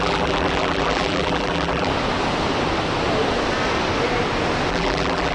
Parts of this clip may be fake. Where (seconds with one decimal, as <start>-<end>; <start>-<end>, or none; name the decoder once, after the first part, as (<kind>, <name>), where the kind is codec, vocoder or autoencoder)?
0.0-1.9 (vocoder, BigVGAN v2); 4.7-5.3